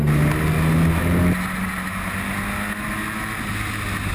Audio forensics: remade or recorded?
recorded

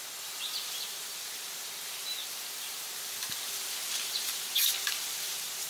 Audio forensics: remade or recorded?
remade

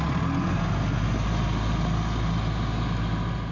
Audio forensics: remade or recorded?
recorded